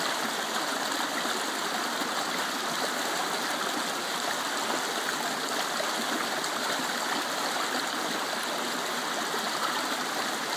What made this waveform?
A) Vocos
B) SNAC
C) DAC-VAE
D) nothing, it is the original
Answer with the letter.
D